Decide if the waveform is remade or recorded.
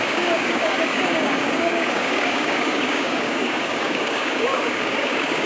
remade